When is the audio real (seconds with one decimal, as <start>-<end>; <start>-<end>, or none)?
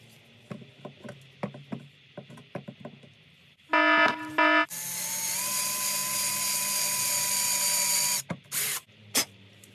0.0-9.7